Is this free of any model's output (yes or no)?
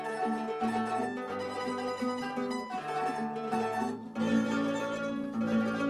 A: yes